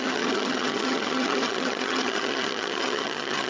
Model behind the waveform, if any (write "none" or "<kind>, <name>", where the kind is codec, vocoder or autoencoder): vocoder, HiFi-GAN